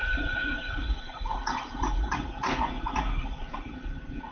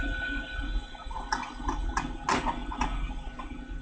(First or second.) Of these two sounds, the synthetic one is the first